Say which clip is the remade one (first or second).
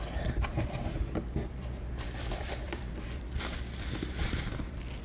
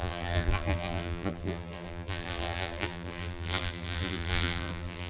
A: second